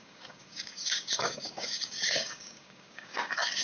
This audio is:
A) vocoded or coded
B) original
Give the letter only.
A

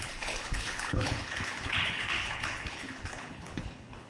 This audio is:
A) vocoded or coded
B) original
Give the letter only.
A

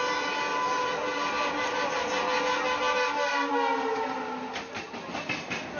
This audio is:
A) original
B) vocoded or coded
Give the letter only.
A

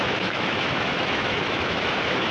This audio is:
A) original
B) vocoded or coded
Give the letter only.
B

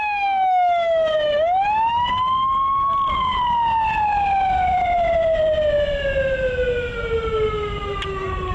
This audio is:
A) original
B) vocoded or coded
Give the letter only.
A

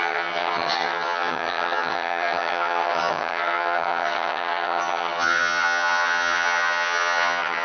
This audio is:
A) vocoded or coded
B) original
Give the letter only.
A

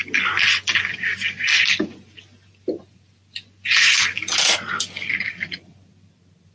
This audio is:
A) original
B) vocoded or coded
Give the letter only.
A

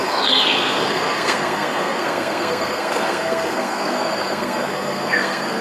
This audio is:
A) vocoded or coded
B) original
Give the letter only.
A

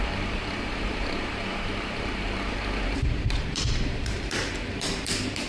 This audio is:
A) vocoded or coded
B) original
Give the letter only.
A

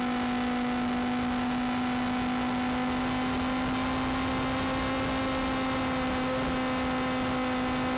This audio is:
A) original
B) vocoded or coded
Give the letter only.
A